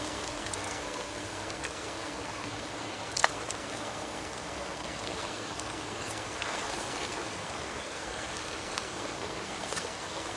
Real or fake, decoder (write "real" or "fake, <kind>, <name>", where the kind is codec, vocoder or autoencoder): fake, codec, SNAC